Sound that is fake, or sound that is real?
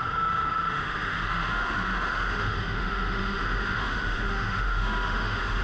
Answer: fake